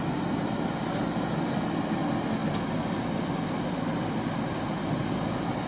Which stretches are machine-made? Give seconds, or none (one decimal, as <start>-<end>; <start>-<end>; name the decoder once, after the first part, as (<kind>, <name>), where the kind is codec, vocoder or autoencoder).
none